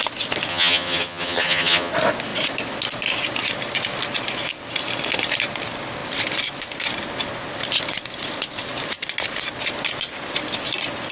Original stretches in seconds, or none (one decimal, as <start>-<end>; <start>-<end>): 0.0-0.5; 1.9-11.1